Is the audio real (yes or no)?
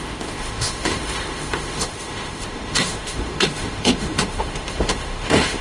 no